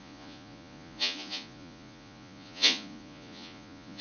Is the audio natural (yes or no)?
no